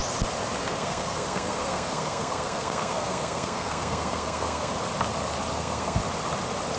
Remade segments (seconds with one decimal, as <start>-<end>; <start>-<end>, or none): 0.6-4.7; 5.5-6.0